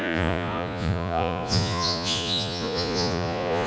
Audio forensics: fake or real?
fake